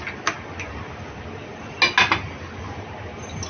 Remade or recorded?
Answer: recorded